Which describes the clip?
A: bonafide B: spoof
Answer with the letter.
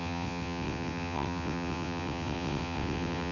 B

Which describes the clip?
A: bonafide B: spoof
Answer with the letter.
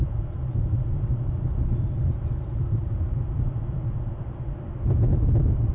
A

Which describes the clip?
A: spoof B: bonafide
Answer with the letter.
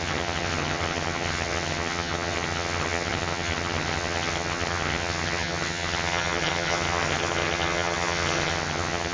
A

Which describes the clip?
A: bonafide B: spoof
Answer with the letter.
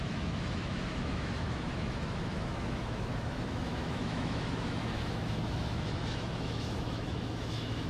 B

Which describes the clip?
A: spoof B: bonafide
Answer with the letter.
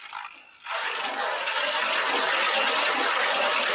B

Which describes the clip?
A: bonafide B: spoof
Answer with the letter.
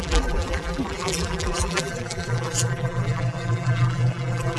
B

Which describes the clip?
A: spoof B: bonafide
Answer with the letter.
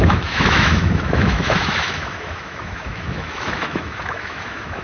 A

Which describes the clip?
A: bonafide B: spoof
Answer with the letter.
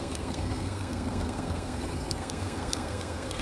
B